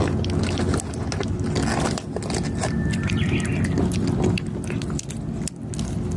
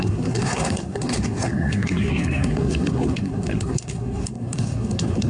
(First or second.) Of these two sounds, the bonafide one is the first